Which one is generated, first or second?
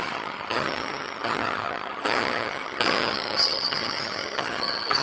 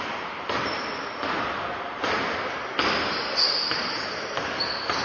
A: first